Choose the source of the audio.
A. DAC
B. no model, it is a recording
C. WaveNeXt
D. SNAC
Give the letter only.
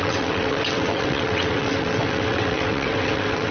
C